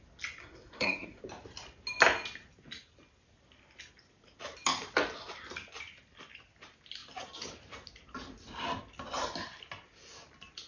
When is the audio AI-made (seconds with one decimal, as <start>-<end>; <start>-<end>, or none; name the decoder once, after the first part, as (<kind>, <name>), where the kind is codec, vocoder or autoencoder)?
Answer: 0.4-1.2 (codec, SNAC)